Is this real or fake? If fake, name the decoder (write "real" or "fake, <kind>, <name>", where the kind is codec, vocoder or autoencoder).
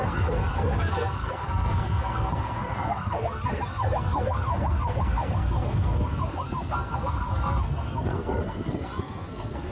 fake, codec, SNAC